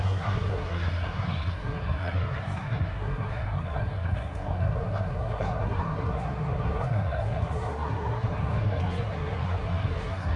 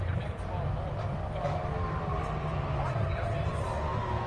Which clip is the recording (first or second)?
second